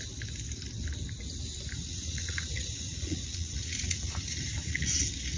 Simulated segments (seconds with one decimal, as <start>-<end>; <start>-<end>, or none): 1.8-5.0